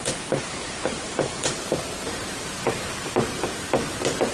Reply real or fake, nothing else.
fake